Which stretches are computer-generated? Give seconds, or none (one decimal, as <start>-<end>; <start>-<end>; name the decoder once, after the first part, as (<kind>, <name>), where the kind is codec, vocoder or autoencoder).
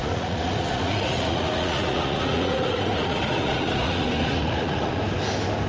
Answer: 0.0-5.0 (vocoder, Vocos)